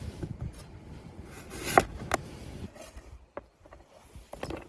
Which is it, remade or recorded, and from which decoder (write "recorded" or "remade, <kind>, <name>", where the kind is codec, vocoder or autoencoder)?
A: recorded